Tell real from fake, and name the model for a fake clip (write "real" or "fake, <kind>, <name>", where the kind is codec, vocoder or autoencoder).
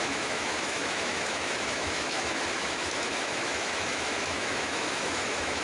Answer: fake, autoencoder, DAC-VAE